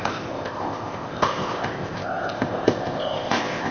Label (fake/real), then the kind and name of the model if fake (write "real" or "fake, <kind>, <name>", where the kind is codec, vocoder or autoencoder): fake, codec, ZipCodec